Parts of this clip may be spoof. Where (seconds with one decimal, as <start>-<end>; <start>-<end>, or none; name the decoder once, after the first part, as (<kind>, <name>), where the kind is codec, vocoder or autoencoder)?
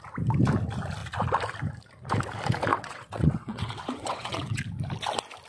2.7-4.6 (vocoder, WaveNeXt)